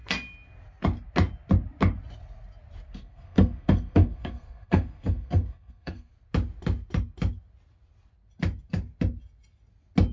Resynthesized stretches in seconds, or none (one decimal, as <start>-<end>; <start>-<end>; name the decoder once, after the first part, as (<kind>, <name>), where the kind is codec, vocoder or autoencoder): 2.9-6.1 (codec, SNAC)